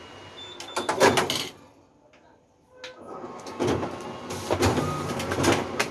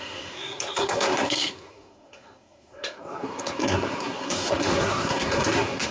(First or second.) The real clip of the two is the first